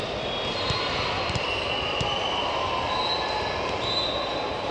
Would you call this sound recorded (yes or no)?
yes